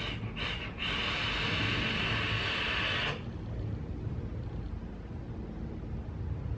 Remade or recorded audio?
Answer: remade